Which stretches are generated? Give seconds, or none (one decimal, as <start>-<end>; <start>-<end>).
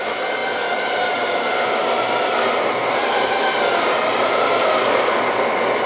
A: none